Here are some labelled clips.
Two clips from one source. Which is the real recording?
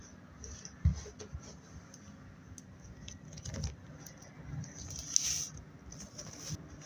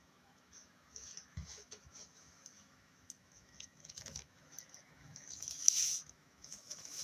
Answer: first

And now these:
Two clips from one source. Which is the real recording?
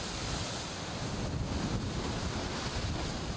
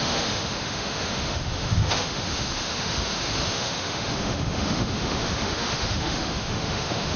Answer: first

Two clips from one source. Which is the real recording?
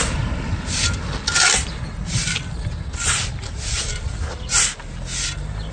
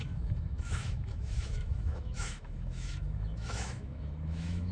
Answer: first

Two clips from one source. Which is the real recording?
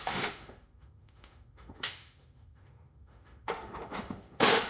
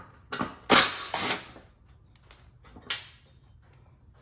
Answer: second